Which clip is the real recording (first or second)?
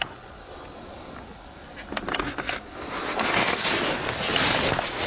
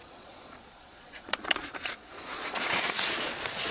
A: first